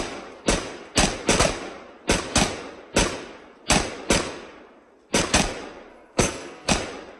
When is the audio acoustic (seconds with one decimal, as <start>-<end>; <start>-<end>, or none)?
0.0-5.9; 6.7-7.2